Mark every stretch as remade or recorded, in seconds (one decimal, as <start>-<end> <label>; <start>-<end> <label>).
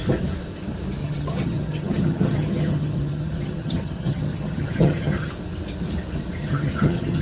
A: 0.0-1.0 recorded; 1.0-5.3 remade; 5.3-6.4 recorded; 6.4-7.2 remade